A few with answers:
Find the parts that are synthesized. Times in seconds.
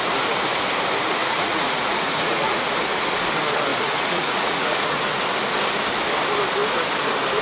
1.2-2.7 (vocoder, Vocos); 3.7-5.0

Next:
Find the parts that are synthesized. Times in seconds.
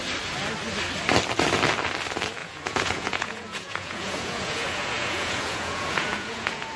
2.4-6.8 (vocoder, Vocos)